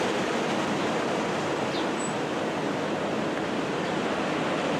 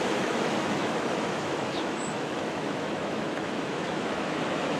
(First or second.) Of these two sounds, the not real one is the second